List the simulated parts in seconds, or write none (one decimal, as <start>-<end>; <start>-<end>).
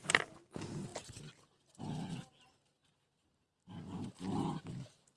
none